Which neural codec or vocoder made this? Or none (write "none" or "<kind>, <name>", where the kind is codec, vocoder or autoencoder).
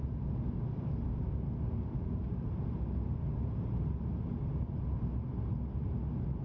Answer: none